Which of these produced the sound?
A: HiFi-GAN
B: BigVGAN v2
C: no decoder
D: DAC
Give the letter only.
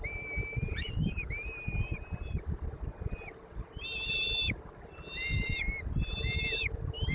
C